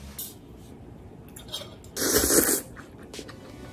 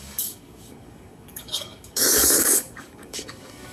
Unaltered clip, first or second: first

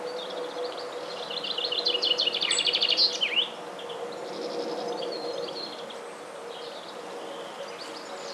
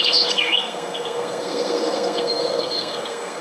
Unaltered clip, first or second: first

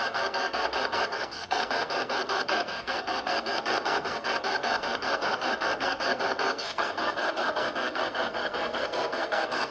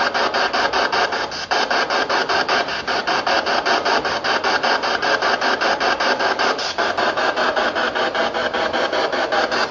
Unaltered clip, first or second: second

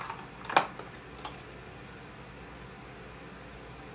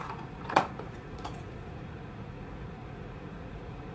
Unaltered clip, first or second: first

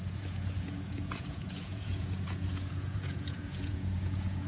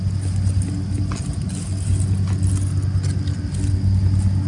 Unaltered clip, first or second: second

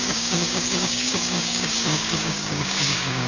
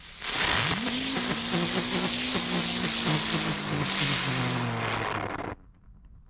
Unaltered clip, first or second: second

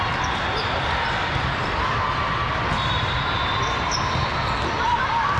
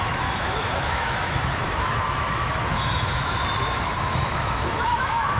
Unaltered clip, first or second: first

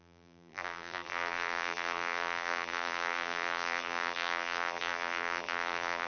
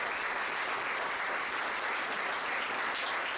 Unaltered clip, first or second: second